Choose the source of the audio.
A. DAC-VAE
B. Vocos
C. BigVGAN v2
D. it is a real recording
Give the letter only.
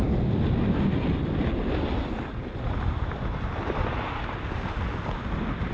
D